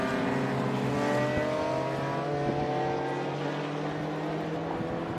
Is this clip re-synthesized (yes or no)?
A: no